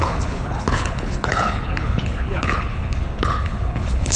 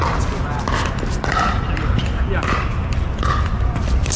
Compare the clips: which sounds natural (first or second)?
second